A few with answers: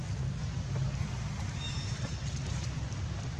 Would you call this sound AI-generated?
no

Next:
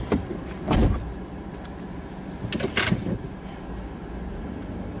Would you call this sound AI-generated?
no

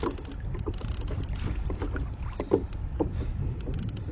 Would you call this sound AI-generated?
no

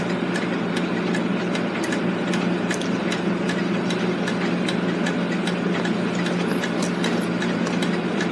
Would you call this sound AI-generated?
no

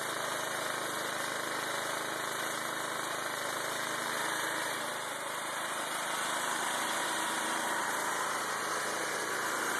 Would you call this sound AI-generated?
yes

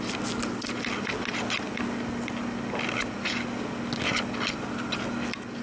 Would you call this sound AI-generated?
no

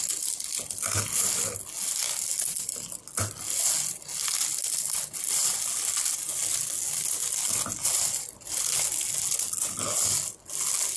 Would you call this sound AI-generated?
no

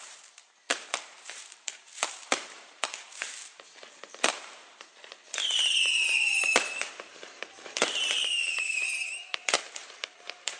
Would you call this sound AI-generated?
yes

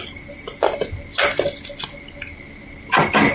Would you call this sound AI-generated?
no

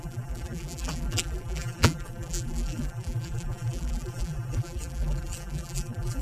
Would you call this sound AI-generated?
yes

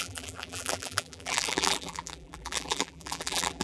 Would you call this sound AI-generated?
yes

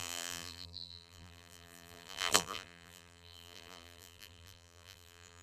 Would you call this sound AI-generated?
yes